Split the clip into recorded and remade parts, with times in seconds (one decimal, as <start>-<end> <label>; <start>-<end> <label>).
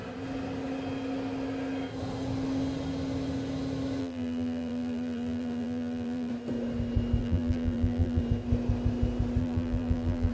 0.0-4.0 recorded; 4.0-6.3 remade; 6.3-7.2 recorded; 7.2-8.2 remade; 8.2-9.4 recorded; 9.4-10.3 remade